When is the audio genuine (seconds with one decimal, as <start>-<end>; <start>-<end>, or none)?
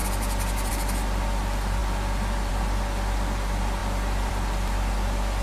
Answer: 0.0-5.4